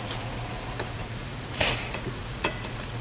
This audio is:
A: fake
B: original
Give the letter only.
A